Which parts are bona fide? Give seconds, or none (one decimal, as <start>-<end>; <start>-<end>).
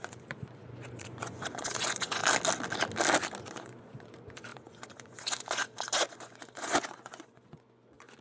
2.2-3.4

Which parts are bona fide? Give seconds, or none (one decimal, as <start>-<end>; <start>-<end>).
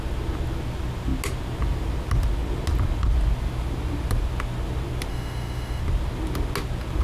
0.0-5.1; 5.8-7.0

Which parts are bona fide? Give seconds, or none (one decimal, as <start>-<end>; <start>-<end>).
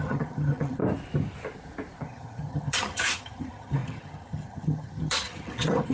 0.8-2.0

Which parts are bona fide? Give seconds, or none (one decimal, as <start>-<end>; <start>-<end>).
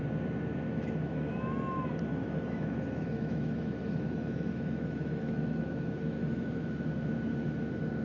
0.0-0.7; 1.3-2.1; 6.7-8.0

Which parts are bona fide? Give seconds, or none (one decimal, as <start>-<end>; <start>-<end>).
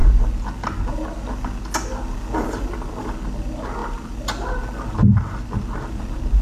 0.0-6.4